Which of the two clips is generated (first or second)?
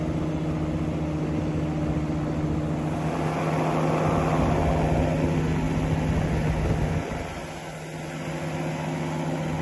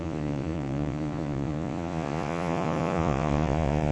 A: second